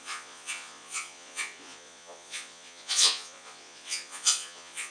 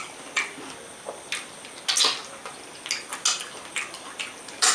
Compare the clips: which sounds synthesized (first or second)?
first